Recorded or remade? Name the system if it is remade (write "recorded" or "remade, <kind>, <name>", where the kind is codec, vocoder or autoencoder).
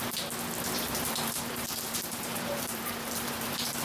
remade, vocoder, BigVGAN v2